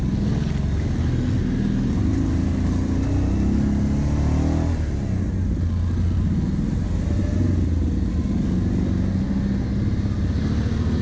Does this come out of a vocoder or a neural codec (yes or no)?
no